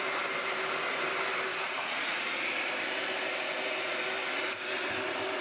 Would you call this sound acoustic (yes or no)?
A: yes